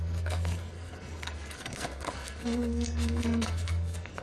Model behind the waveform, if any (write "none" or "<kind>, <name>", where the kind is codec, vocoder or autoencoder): codec, SNAC